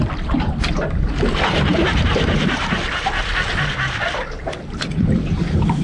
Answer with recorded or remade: recorded